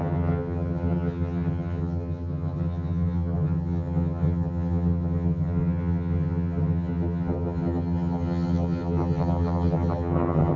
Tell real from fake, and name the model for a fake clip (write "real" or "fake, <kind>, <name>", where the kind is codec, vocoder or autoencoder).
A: fake, vocoder, HiFi-GAN